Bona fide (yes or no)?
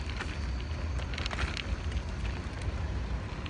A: yes